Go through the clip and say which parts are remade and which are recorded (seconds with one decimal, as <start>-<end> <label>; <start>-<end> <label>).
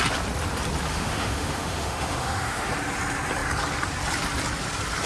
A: 0.0-0.9 recorded; 0.9-2.7 remade; 2.7-5.1 recorded